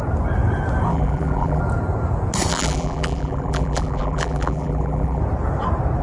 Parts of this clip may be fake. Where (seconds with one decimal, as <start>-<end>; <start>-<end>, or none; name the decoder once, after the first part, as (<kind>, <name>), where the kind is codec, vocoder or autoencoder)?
0.9-1.6 (vocoder, BigVGAN v2); 2.5-5.2